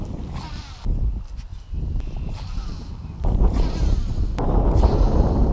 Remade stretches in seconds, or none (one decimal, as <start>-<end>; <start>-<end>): 1.5-4.2